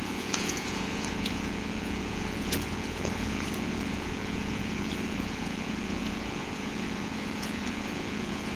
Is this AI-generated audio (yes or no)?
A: yes